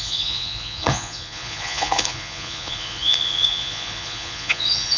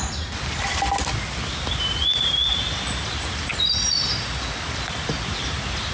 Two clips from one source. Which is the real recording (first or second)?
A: second